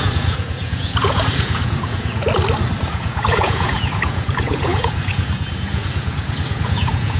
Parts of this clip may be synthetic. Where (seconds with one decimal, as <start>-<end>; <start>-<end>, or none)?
0.0-2.3; 2.8-7.2

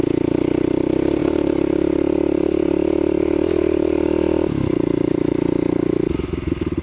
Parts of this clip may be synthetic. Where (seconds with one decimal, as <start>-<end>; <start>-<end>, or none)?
none

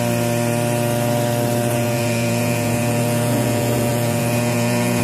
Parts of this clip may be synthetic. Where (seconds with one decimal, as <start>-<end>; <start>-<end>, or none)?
1.7-5.0

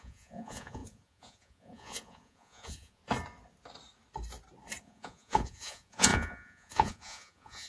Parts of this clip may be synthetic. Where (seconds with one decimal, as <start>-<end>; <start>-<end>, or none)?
0.0-3.0; 4.8-7.7

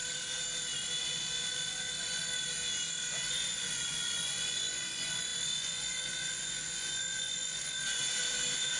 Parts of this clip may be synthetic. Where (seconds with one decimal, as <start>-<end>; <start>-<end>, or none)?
1.0-2.2; 3.2-8.0

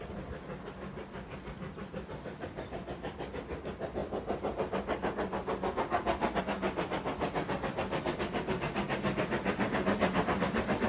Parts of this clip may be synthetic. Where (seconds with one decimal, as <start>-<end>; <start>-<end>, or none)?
none

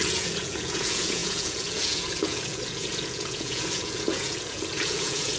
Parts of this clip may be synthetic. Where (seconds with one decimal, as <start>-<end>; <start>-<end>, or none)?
0.0-5.4